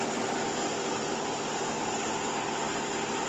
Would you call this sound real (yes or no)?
yes